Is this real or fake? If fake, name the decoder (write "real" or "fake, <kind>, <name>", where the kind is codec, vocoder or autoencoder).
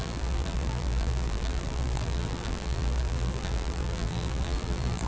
fake, vocoder, BigVGAN v2